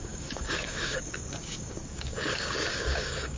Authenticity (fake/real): fake